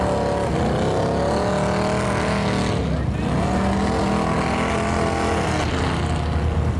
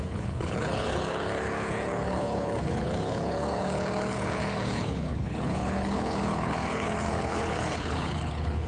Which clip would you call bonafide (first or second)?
first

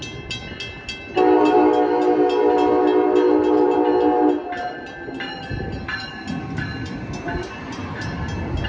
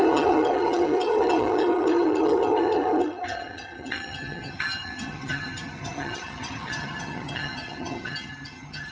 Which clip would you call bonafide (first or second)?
first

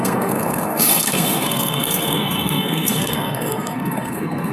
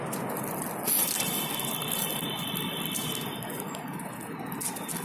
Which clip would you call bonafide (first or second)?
second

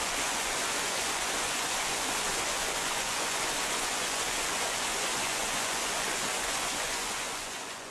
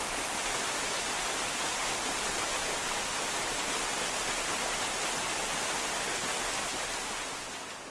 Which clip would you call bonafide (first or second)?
second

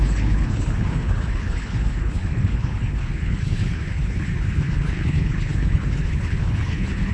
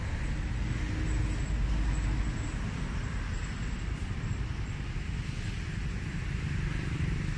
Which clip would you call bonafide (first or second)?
second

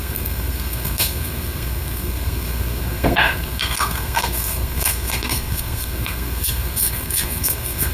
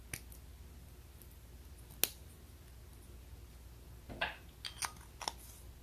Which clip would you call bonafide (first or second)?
second